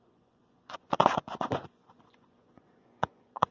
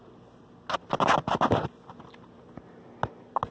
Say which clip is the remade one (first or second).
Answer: first